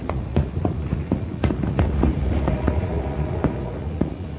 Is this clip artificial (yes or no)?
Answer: yes